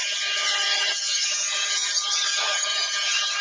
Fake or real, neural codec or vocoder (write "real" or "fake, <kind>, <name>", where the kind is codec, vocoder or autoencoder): fake, vocoder, HiFi-GAN